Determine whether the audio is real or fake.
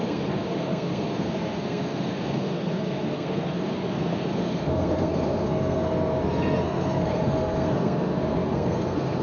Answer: fake